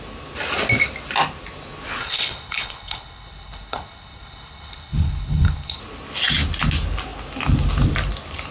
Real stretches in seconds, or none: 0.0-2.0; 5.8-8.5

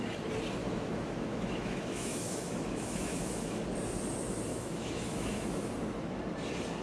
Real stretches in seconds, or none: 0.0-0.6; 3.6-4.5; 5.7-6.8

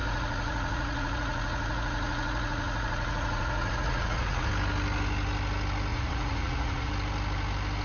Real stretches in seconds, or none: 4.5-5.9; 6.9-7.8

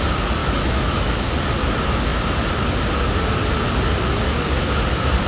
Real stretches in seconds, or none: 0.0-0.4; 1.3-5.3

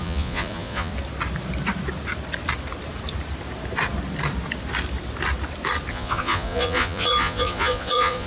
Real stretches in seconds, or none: 0.9-5.9

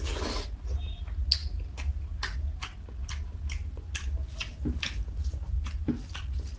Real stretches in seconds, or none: 0.0-6.6

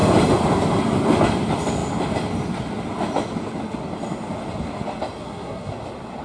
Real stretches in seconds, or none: 0.0-5.2; 5.7-6.2

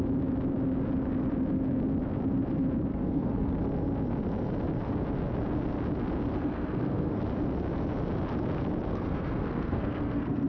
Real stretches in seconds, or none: 0.0-2.9; 3.6-6.3; 7.2-8.9